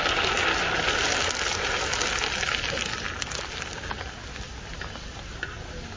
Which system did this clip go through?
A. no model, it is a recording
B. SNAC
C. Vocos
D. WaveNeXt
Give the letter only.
A